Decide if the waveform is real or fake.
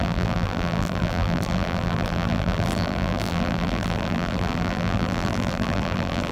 fake